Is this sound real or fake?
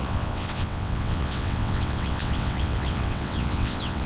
fake